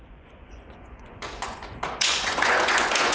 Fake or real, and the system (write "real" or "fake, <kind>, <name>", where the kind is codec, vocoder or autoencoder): fake, vocoder, Vocos